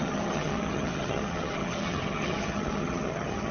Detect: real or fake fake